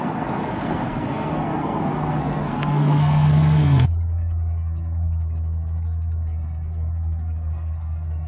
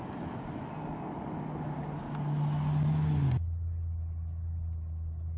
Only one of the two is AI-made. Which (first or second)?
first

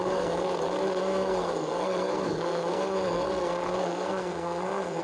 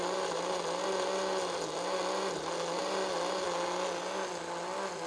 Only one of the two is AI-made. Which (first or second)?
first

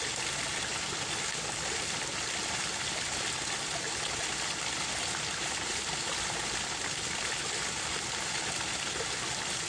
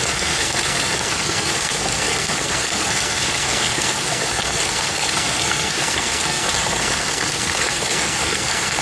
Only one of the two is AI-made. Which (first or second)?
second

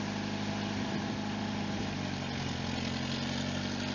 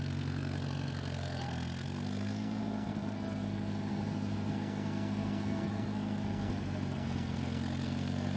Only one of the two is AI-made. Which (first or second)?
second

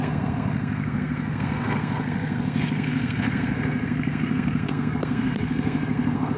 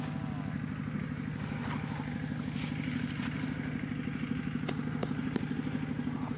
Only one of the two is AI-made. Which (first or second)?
first